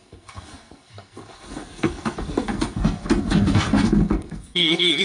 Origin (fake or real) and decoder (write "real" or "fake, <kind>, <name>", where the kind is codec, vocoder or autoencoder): fake, codec, SNAC